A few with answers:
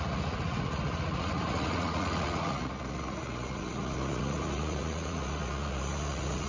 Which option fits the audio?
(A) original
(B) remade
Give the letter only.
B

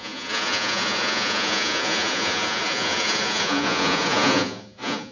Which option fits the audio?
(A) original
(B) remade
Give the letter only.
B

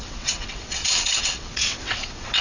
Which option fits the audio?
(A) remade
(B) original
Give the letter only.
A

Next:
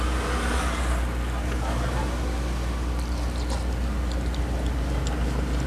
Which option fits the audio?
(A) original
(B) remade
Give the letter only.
A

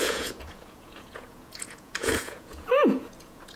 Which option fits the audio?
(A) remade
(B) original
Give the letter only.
A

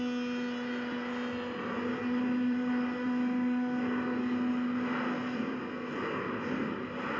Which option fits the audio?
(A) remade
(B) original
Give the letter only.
B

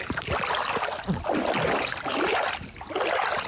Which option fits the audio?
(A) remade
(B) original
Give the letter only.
B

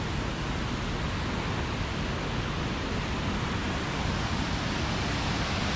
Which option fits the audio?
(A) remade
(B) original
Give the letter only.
B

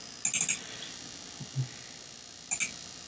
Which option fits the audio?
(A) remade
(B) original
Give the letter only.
B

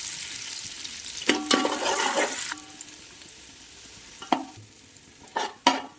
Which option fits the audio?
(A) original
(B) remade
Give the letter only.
A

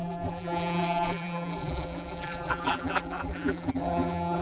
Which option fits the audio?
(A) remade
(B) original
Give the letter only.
A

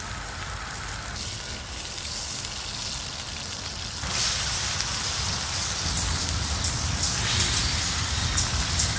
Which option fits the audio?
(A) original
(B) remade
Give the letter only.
A